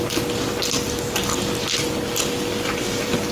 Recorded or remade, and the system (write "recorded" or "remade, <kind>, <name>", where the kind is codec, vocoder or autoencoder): recorded